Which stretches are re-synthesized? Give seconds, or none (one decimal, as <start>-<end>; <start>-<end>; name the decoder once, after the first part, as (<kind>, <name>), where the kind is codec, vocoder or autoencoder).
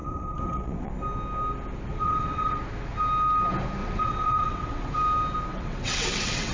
0.0-0.9 (vocoder, WaveNeXt); 1.9-2.6; 3.8-4.9; 5.5-6.5